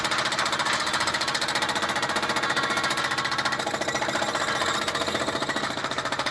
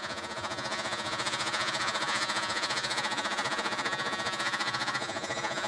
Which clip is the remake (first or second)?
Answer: second